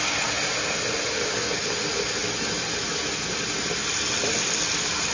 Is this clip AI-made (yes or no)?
no